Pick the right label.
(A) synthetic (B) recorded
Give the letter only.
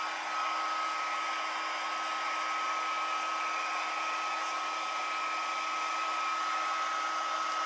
B